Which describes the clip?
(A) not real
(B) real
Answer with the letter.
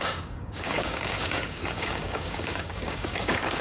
A